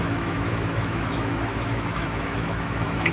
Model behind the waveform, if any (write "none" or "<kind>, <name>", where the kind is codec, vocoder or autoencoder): autoencoder, DAC-VAE